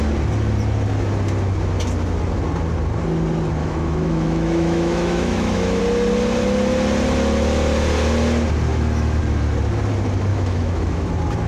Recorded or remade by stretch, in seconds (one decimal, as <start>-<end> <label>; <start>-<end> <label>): 0.0-3.6 recorded; 3.6-5.8 remade; 5.8-8.7 recorded; 8.7-9.2 remade; 9.2-10.3 recorded; 10.3-11.1 remade; 11.1-11.5 recorded